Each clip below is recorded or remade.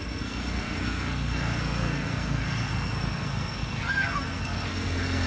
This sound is remade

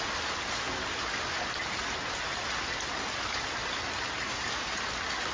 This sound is recorded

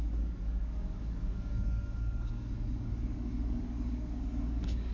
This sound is remade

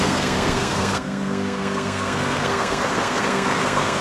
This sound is remade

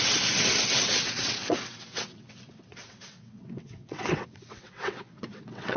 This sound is remade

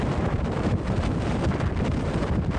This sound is recorded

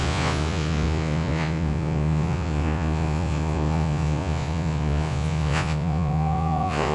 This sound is remade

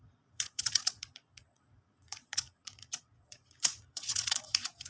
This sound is remade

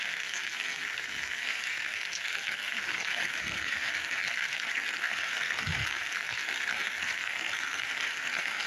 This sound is remade